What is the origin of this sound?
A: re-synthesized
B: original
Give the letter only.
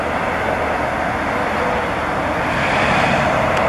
B